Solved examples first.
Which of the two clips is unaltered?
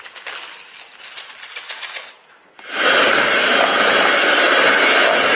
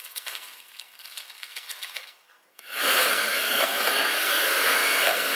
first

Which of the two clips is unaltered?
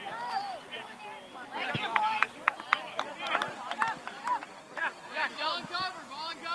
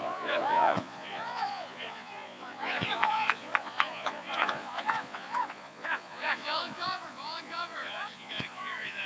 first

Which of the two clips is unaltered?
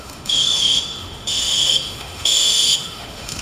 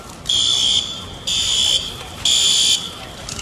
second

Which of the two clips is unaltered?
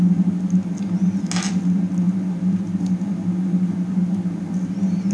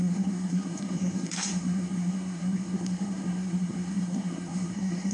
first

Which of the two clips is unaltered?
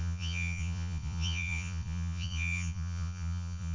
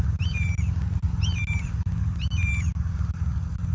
second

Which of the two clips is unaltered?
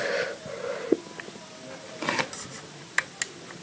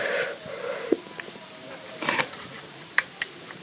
first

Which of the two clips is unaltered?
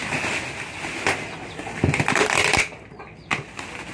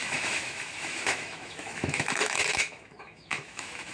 first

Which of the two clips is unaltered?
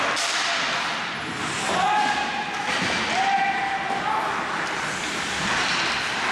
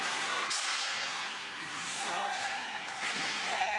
first